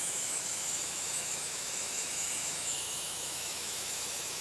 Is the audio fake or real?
fake